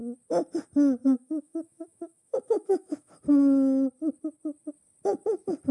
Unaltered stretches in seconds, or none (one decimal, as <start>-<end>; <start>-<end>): 0.0-1.0; 3.1-5.7